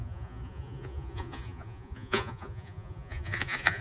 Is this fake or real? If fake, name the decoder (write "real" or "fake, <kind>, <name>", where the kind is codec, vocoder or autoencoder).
fake, vocoder, Vocos